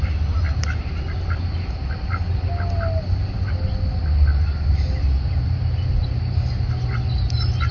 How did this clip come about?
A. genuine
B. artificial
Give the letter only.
A